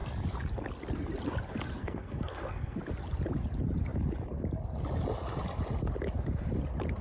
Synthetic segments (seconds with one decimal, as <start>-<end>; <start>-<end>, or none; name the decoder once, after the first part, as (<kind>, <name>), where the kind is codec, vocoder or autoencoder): 1.8-2.8 (codec, SNAC)